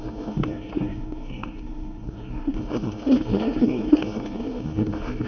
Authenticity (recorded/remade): remade